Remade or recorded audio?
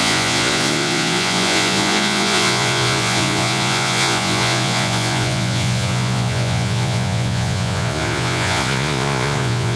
remade